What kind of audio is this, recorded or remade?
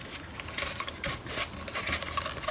recorded